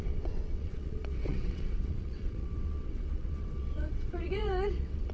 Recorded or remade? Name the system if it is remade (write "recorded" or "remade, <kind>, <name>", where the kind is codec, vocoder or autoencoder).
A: remade, vocoder, WaveNeXt